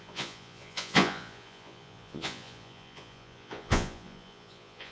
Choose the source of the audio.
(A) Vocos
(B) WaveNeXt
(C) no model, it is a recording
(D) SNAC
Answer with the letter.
A